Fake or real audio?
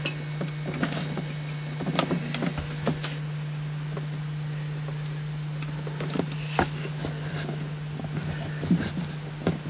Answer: real